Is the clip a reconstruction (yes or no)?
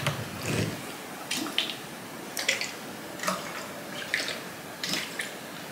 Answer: no